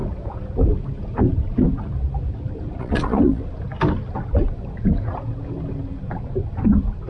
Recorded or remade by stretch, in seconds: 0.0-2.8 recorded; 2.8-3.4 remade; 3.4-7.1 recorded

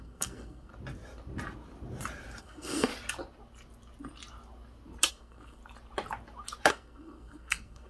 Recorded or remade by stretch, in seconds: 0.0-0.7 remade; 0.7-2.4 recorded; 2.4-2.9 remade; 2.9-5.1 recorded; 5.1-5.6 remade; 5.6-6.7 recorded; 6.7-7.9 remade

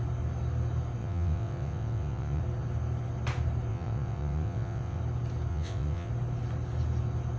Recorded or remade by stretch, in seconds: 0.0-1.0 recorded; 1.0-2.4 remade; 2.4-3.7 recorded; 3.7-5.0 remade; 5.0-5.5 recorded; 5.5-6.1 remade; 6.1-7.4 recorded

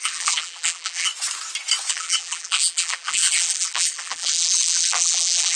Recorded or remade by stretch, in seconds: 0.0-1.1 remade; 1.1-1.9 recorded; 1.9-5.6 remade

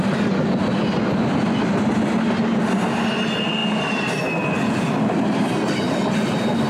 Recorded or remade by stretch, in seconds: 0.0-6.7 recorded

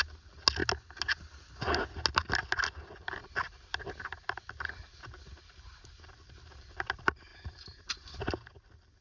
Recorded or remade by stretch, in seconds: 0.0-7.3 recorded; 7.3-7.9 remade; 7.9-9.0 recorded

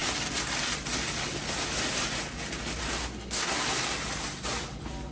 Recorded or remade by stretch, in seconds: 0.0-3.0 recorded; 3.0-3.6 remade; 3.6-5.1 recorded

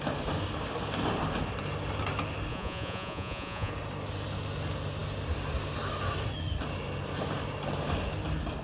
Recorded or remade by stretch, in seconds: 0.0-2.5 recorded; 2.5-3.7 remade; 3.7-8.6 recorded